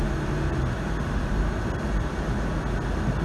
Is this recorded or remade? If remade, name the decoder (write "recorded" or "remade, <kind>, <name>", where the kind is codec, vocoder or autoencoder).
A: recorded